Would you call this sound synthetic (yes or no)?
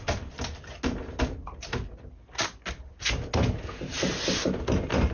no